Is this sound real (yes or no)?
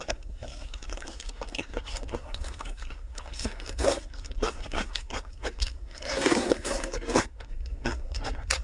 no